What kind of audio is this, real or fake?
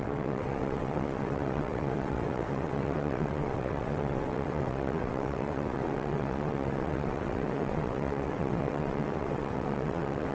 fake